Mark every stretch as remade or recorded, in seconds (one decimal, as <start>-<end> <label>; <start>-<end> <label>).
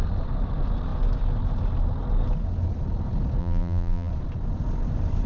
0.0-3.4 recorded; 3.4-4.1 remade; 4.1-5.3 recorded